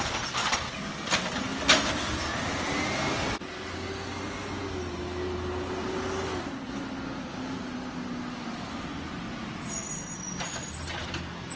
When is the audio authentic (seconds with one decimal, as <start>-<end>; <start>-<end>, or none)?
0.0-11.6